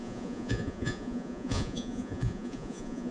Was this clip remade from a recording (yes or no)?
yes